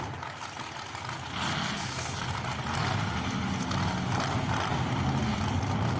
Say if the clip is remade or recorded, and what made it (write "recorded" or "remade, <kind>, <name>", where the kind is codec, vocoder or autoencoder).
recorded